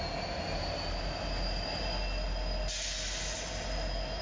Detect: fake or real real